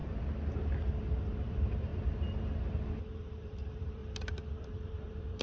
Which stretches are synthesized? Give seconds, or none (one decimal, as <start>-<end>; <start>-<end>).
1.0-1.9; 3.0-4.0; 4.5-5.4